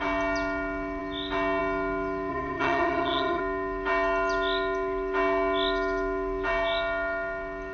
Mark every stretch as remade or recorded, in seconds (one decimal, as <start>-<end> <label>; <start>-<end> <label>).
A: 0.0-2.3 recorded; 2.3-3.4 remade; 3.4-7.7 recorded